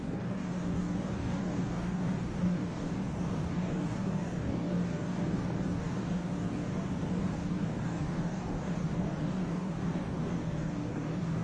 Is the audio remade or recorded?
remade